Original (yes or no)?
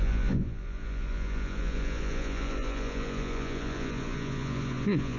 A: no